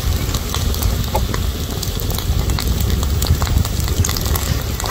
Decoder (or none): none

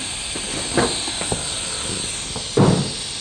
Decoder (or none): none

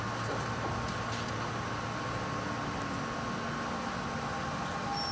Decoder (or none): none